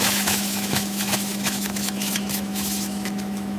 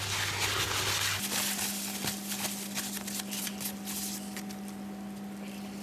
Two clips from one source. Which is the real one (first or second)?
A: second